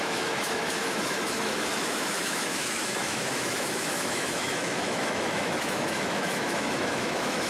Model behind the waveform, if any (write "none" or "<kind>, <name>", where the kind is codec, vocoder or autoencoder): autoencoder, DAC-VAE